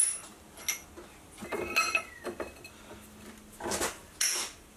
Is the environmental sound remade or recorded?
recorded